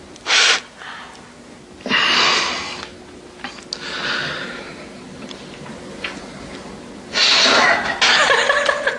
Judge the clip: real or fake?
real